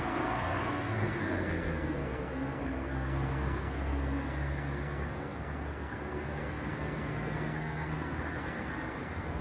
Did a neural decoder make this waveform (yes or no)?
yes